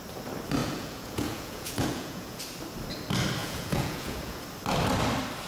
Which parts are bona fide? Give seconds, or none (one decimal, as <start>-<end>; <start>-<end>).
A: 0.0-0.6; 2.4-3.4; 4.4-5.5